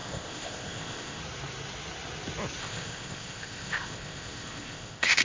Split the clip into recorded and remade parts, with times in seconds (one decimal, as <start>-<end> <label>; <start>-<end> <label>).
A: 0.0-1.2 remade; 1.2-2.6 recorded; 2.6-5.2 remade